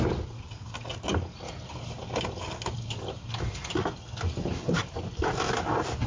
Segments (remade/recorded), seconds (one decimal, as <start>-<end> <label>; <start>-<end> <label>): 0.0-6.1 recorded